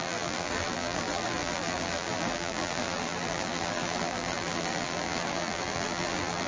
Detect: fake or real fake